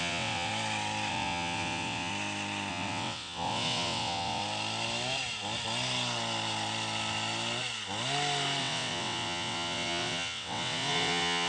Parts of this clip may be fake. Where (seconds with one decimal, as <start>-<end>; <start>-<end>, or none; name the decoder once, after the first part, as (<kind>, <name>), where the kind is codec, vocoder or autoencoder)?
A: 0.0-0.5 (vocoder, WaveNeXt); 1.1-2.1; 2.7-4.4; 8.6-11.5